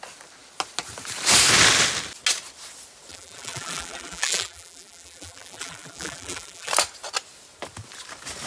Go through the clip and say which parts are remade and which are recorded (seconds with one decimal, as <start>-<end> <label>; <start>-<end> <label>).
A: 0.0-3.1 recorded; 3.1-6.7 remade; 6.7-8.5 recorded